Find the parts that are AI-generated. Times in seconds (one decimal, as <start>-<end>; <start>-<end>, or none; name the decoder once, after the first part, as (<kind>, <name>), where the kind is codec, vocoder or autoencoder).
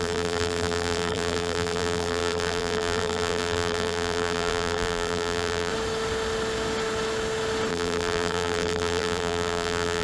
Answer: 0.0-5.7 (vocoder, BigVGAN v2); 7.7-10.0